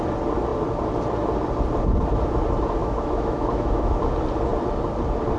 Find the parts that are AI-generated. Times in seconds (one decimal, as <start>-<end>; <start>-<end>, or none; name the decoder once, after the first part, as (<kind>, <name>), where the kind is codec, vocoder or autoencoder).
2.8-4.0 (autoencoder, DAC-VAE)